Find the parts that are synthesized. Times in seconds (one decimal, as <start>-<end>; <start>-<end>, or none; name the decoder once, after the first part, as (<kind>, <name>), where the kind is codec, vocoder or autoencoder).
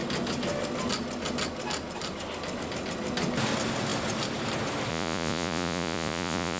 4.9-6.6 (vocoder, Vocos)